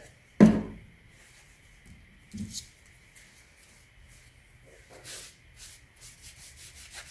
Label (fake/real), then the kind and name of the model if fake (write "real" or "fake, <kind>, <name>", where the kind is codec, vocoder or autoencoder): real